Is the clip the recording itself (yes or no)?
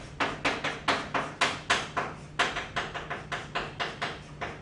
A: yes